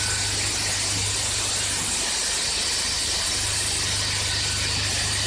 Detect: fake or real real